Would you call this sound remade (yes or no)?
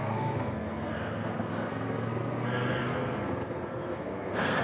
yes